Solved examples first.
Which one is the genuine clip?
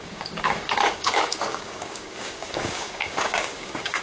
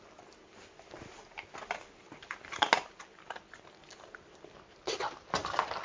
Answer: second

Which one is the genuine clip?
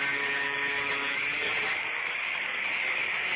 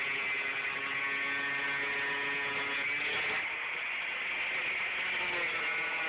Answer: second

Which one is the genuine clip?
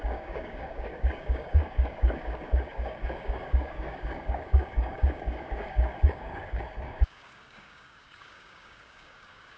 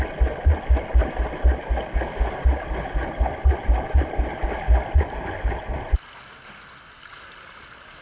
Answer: second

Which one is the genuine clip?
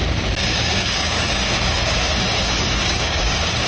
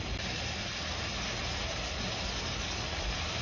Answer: second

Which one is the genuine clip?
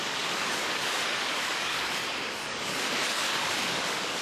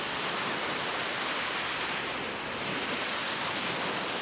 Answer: second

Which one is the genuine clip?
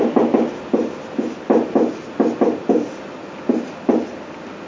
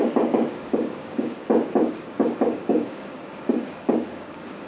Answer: first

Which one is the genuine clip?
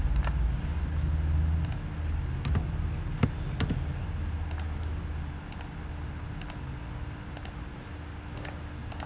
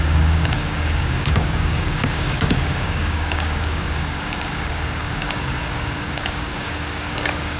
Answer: first